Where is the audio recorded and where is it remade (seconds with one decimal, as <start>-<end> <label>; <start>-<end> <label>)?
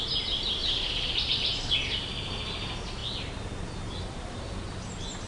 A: 0.0-0.6 recorded; 0.6-1.1 remade; 1.1-5.3 recorded